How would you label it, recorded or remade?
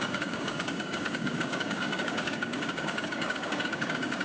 remade